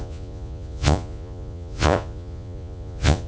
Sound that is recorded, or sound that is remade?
remade